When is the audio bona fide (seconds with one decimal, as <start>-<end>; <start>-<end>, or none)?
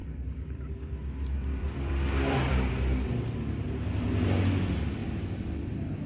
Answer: 0.7-1.6; 2.7-5.0